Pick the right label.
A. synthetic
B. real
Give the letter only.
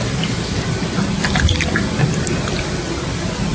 B